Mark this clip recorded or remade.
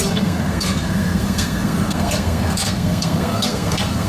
remade